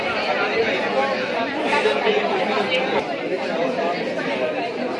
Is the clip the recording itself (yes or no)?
yes